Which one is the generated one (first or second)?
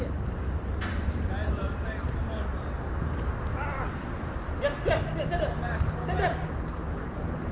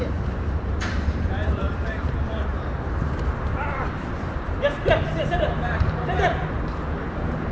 second